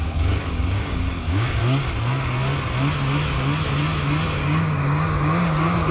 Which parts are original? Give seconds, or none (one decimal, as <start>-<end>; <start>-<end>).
1.6-4.4